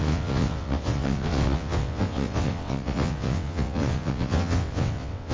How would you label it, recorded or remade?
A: remade